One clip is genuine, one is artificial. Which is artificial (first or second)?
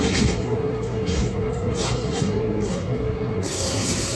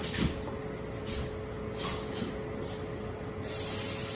first